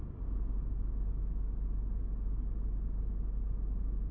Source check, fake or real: real